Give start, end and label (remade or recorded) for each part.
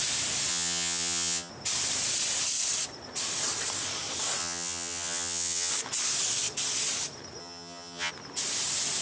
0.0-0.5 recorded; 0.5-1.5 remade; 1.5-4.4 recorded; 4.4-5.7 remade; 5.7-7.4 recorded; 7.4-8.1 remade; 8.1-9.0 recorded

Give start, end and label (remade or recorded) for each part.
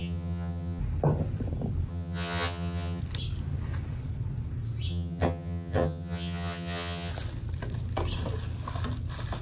0.0-0.8 remade; 0.8-1.9 recorded; 1.9-3.0 remade; 3.0-4.9 recorded; 4.9-7.1 remade; 7.1-9.4 recorded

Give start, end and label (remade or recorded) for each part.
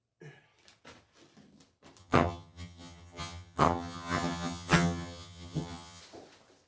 0.0-2.0 recorded; 2.0-6.0 remade; 6.0-6.7 recorded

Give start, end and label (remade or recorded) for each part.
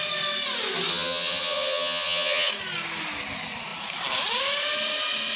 0.0-0.9 recorded; 0.9-2.5 remade; 2.5-5.4 recorded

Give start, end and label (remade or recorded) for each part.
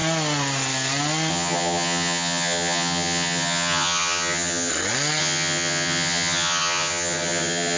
0.0-1.3 recorded; 1.3-4.7 remade; 4.7-5.2 recorded; 5.2-7.8 remade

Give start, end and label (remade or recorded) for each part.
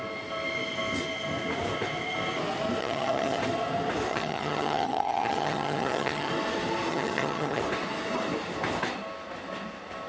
0.0-2.8 recorded; 2.8-3.4 remade; 3.4-4.1 recorded; 4.1-6.3 remade; 6.3-6.9 recorded; 6.9-7.6 remade; 7.6-10.1 recorded